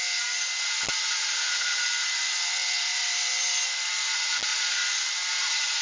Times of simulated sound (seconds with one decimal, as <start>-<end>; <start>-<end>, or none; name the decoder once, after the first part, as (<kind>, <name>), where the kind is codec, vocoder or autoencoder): 0.9-3.3 (vocoder, BigVGAN v2); 4.5-5.8